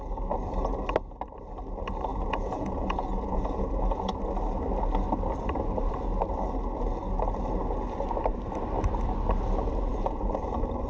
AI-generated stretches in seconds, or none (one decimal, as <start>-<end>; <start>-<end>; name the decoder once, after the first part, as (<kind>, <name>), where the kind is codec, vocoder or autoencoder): 2.1-4.1 (vocoder, Vocos); 9.9-10.5